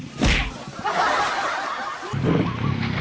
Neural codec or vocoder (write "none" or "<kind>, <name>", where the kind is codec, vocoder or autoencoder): none